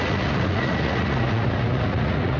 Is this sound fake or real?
fake